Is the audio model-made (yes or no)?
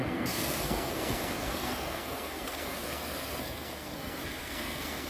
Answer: yes